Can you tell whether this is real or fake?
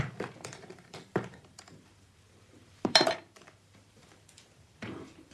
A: fake